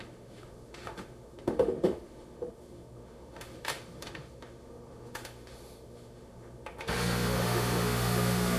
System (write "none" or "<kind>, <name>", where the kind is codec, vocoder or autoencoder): autoencoder, DAC-VAE